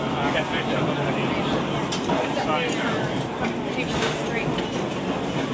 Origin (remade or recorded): recorded